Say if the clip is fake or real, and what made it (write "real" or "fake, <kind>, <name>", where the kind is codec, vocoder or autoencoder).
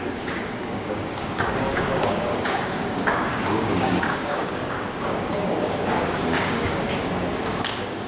fake, codec, DAC